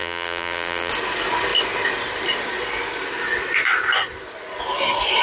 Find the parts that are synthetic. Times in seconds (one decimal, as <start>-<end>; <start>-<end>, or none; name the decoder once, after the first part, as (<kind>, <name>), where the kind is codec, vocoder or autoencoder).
0.0-0.9 (vocoder, BigVGAN v2)